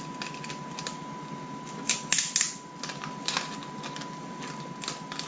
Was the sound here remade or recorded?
recorded